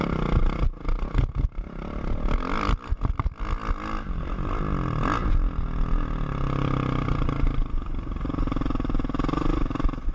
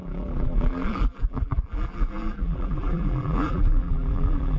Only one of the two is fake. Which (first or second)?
second